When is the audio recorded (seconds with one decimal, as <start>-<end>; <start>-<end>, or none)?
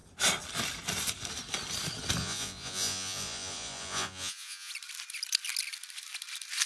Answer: 0.0-2.2; 4.7-6.7